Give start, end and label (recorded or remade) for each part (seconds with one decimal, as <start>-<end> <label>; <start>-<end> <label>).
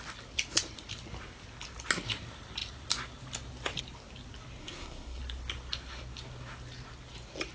0.0-4.6 recorded; 4.6-5.2 remade; 5.2-7.5 recorded